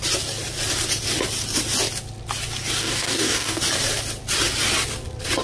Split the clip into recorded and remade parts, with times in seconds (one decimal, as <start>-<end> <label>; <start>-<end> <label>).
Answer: 0.0-2.8 recorded; 2.8-3.6 remade; 3.6-5.4 recorded